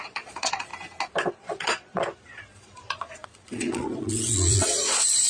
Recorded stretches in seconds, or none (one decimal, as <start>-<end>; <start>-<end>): 0.7-1.3